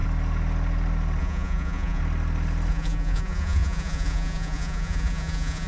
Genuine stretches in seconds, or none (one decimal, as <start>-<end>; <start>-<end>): 0.0-1.2; 2.0-2.7